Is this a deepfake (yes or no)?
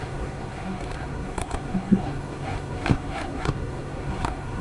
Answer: yes